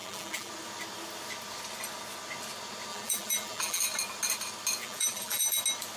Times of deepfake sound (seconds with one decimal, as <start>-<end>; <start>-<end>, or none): 0.0-0.5; 2.9-3.8; 4.8-5.6